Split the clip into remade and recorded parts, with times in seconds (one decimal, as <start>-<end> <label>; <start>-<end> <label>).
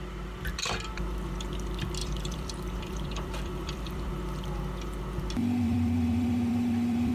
0.0-2.0 recorded; 2.0-4.1 remade; 4.1-5.4 recorded; 5.4-7.1 remade